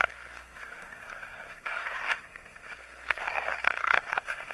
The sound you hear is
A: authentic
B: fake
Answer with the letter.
B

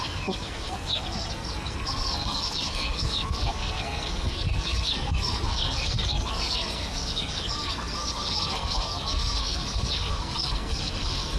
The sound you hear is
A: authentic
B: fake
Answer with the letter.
B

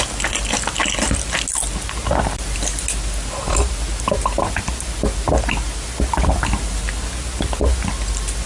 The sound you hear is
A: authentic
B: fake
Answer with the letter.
A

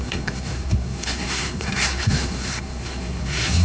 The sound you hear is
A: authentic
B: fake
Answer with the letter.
B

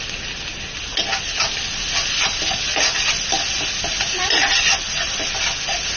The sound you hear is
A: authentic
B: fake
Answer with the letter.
A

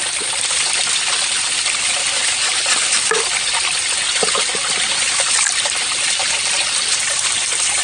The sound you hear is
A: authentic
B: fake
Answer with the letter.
A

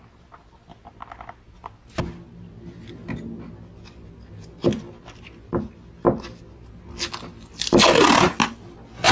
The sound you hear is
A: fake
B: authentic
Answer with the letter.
B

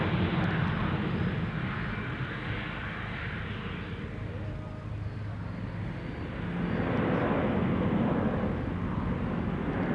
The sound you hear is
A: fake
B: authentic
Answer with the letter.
B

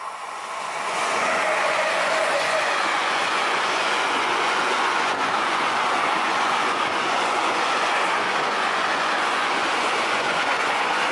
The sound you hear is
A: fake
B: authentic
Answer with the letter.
A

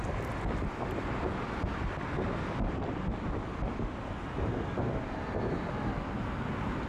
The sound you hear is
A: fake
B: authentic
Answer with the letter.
B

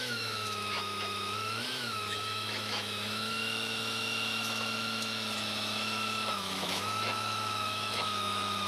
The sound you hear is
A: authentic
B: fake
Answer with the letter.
B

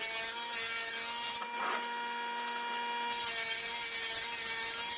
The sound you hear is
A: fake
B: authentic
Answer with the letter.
B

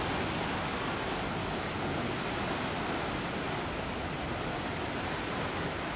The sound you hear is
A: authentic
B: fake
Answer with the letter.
A